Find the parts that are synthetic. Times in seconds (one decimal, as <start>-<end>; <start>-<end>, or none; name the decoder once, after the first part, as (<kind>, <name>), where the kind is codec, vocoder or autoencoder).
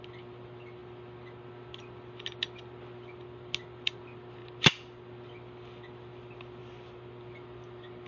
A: none